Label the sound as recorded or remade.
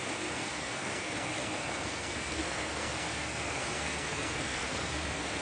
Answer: remade